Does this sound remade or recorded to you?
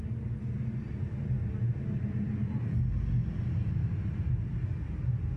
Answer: recorded